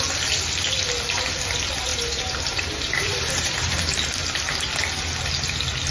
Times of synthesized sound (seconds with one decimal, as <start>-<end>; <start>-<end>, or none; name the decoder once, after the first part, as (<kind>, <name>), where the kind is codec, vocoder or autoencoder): 1.9-3.8 (vocoder, BigVGAN v2)